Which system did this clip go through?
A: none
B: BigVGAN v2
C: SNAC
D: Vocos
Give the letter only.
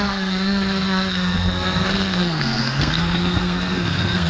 C